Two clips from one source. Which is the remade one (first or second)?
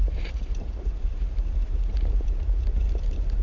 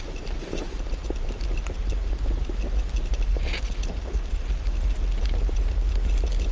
first